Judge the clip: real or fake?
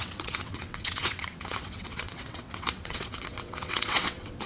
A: fake